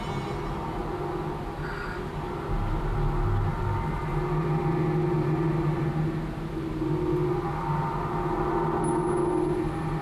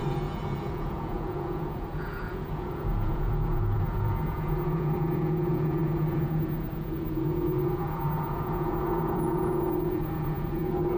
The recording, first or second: first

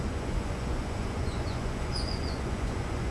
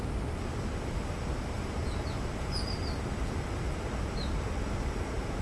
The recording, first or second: second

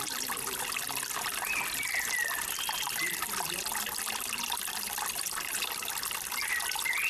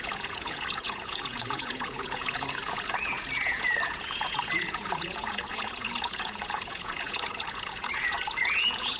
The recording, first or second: first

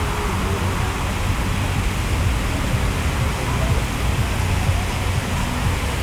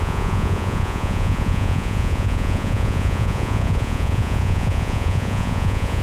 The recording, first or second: first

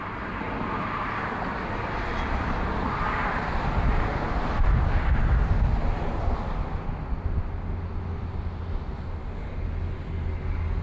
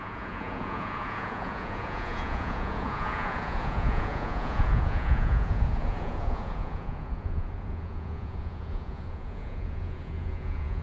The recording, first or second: first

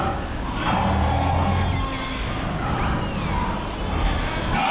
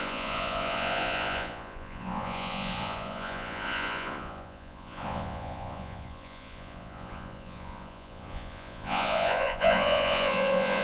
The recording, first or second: first